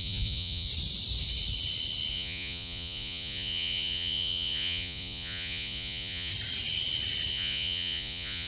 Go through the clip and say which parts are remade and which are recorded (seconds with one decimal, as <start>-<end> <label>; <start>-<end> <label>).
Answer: 0.0-0.7 remade; 0.7-2.1 recorded; 2.1-6.3 remade; 6.3-7.3 recorded; 7.3-8.5 remade